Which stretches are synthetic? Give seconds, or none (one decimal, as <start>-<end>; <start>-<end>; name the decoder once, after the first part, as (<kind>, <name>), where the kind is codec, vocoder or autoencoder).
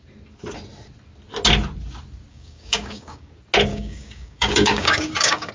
2.3-3.3 (codec, DAC); 3.7-5.5